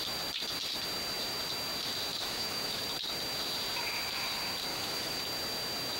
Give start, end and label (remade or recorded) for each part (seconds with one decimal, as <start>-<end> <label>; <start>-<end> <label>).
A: 0.0-2.1 recorded; 2.1-2.8 remade; 2.8-4.7 recorded; 4.7-5.2 remade; 5.2-6.0 recorded